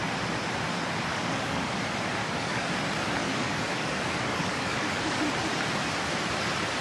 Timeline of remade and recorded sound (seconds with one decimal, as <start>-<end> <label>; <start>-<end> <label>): 0.0-1.1 recorded; 1.1-1.8 remade; 1.8-2.2 recorded; 2.2-2.8 remade; 2.8-3.2 recorded; 3.2-5.2 remade; 5.2-6.8 recorded